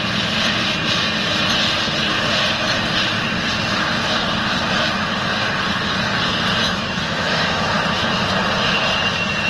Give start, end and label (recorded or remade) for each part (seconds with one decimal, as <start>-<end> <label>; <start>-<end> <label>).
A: 0.0-6.6 recorded; 6.6-7.7 remade; 7.7-9.5 recorded